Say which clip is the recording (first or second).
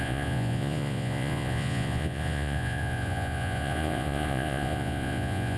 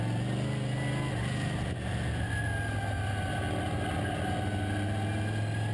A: second